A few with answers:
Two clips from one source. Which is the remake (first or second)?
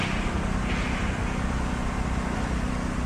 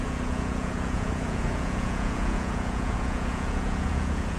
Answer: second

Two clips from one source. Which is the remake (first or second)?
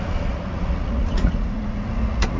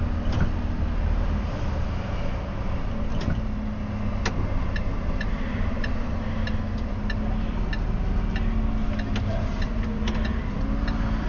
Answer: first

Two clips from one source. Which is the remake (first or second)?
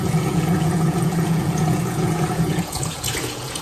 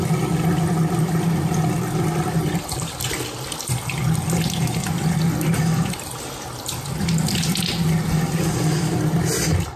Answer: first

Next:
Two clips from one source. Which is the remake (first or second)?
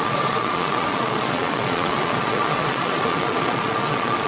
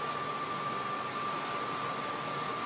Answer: first